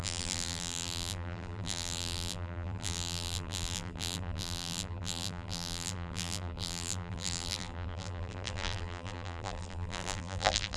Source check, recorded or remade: remade